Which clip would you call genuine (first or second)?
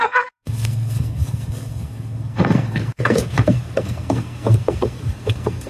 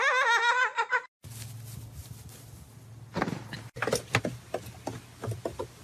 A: second